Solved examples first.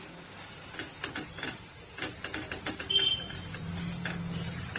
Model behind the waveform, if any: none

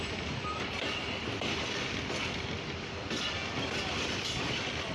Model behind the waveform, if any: none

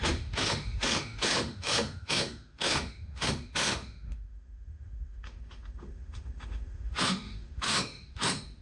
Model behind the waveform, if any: autoencoder, DAC-VAE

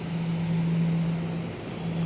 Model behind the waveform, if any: none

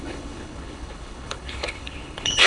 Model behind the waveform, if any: codec, HILCodec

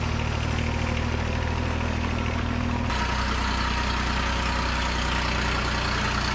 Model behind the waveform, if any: none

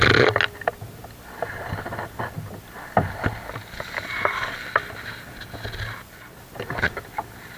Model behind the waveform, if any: none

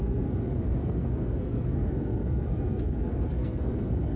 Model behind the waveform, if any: codec, SNAC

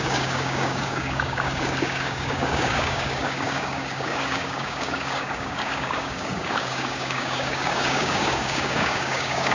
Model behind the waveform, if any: codec, DAC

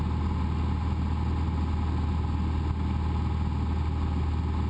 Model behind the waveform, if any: none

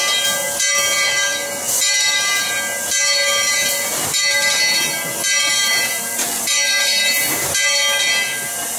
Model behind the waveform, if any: none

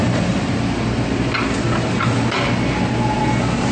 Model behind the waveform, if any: none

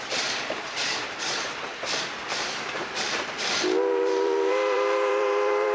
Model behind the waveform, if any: vocoder, BigVGAN v2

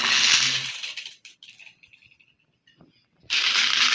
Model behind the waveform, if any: none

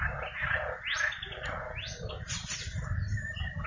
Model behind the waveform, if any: none